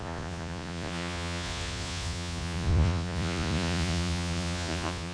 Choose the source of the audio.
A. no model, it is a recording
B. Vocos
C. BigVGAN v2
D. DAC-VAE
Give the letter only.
B